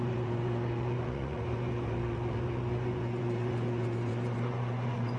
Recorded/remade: remade